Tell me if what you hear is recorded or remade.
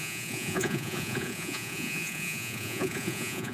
remade